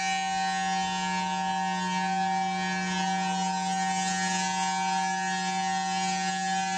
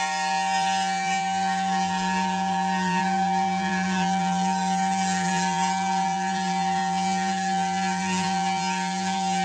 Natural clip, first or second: first